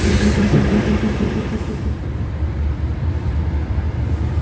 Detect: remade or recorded remade